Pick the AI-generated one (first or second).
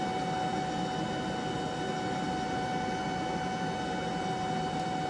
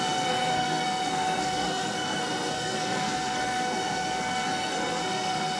second